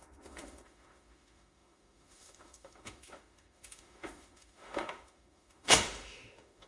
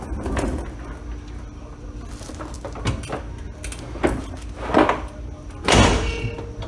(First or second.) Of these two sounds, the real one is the second